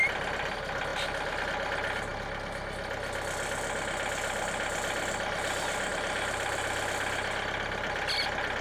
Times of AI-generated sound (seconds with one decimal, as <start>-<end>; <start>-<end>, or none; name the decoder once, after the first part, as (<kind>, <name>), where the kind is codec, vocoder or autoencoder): none